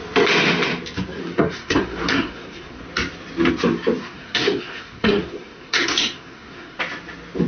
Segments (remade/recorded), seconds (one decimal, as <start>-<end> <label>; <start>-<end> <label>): 0.0-1.2 recorded; 1.2-2.8 remade; 2.8-4.0 recorded; 4.0-6.8 remade; 6.8-7.5 recorded